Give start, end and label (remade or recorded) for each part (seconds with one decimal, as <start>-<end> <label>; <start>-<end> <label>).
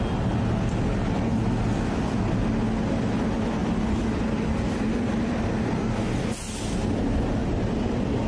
0.0-8.3 recorded